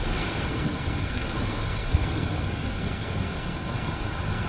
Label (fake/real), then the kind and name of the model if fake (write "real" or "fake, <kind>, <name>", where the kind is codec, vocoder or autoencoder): fake, codec, SNAC